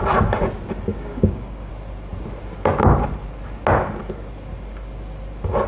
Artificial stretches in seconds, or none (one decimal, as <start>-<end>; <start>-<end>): 0.9-1.7